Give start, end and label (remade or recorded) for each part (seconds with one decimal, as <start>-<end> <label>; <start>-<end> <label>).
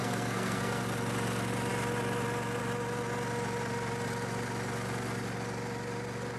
0.0-0.8 remade; 0.8-6.4 recorded